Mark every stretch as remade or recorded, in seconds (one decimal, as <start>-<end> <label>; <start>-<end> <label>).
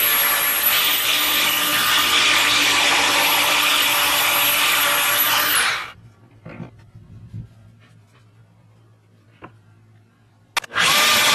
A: 0.0-11.3 recorded